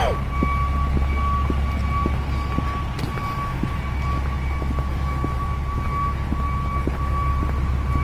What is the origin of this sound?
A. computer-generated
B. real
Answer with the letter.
B